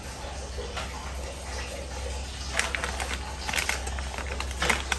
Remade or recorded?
recorded